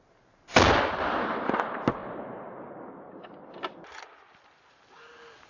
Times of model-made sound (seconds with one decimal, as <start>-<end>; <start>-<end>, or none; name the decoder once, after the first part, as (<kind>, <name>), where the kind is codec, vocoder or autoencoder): none